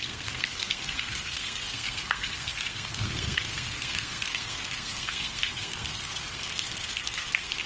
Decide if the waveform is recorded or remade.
remade